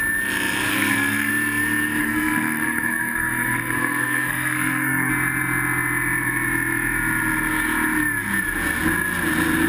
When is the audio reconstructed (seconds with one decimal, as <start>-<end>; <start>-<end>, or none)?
0.7-1.3; 2.0-5.1